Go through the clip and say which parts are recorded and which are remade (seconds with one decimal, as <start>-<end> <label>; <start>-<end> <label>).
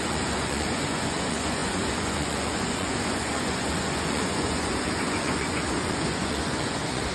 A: 0.0-7.1 remade